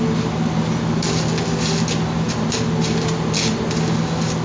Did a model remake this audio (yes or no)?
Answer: no